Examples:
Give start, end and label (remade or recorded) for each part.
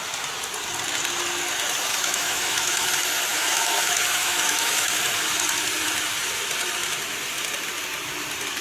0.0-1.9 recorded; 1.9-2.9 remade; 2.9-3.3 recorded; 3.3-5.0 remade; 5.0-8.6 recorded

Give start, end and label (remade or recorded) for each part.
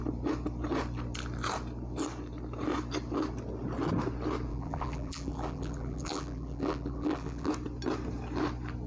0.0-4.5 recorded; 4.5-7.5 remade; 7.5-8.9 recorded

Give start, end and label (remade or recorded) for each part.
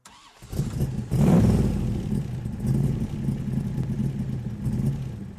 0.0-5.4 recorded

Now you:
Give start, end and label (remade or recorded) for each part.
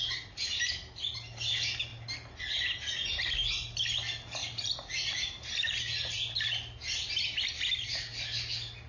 0.0-4.4 recorded; 4.4-5.8 remade; 5.8-8.9 recorded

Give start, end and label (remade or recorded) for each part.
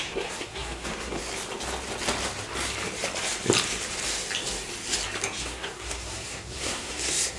0.0-1.2 remade; 1.2-5.4 recorded; 5.4-7.4 remade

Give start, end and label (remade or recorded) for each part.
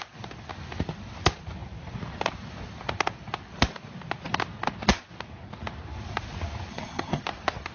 0.0-6.7 recorded; 6.7-7.2 remade; 7.2-7.7 recorded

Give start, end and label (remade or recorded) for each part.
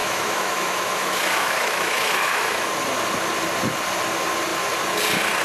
0.0-2.7 remade; 2.7-5.4 recorded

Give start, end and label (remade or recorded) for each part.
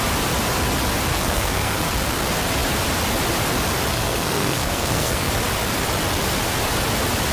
0.0-1.1 recorded; 1.1-1.8 remade; 1.8-3.9 recorded; 3.9-5.3 remade; 5.3-7.3 recorded